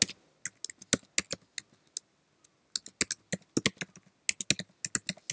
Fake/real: real